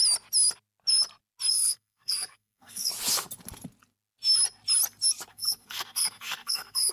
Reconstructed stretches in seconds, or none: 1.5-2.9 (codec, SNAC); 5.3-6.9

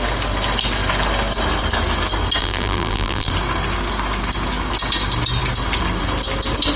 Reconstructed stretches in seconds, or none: 2.4-3.3 (vocoder, BigVGAN v2)

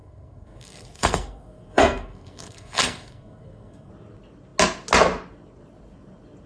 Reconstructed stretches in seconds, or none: 0.0-3.9 (codec, SNAC)